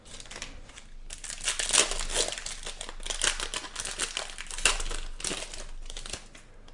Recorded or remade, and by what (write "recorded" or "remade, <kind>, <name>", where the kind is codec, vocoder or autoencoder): recorded